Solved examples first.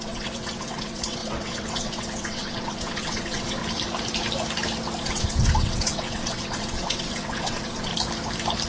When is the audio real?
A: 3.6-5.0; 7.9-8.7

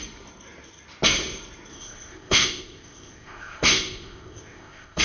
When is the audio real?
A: 0.0-1.7

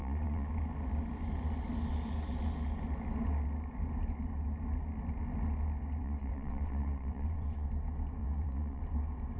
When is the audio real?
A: 0.5-6.0; 7.7-8.2; 8.8-9.4

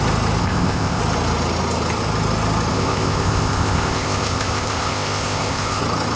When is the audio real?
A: 0.0-0.4; 1.0-2.7; 5.8-6.2

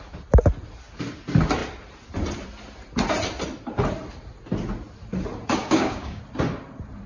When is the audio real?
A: 0.0-5.6; 6.2-7.1

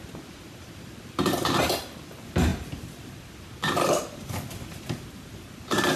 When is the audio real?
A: none

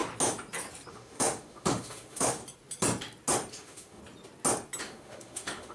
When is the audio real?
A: 0.0-0.9; 2.4-3.5; 4.0-4.8

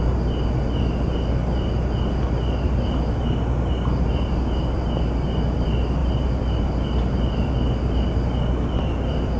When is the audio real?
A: 0.0-6.0; 6.6-9.4